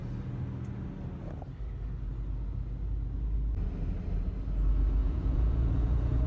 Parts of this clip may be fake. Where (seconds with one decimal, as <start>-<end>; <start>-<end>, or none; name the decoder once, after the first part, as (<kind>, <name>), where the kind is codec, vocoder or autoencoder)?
5.0-6.3 (vocoder, Vocos)